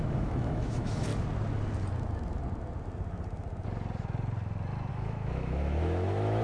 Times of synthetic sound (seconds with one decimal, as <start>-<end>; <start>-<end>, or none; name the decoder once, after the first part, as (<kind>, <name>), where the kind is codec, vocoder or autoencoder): 0.0-1.1 (autoencoder, DAC-VAE); 4.9-6.4